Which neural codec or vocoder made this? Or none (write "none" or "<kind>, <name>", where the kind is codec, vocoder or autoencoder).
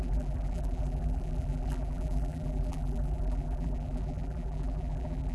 vocoder, BigVGAN v2